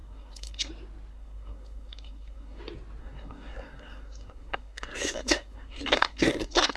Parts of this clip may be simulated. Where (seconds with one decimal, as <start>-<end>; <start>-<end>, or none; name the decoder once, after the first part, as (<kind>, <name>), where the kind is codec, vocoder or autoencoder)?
0.0-0.7 (codec, SNAC); 1.1-2.6; 3.0-6.8